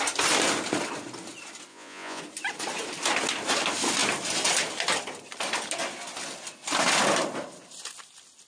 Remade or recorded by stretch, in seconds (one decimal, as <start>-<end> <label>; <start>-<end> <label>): 0.0-1.7 recorded; 1.7-2.2 remade; 2.2-8.5 recorded